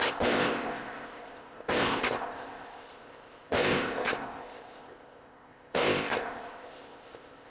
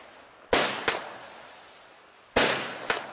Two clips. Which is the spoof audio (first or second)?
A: first